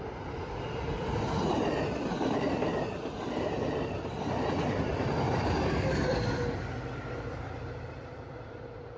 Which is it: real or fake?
fake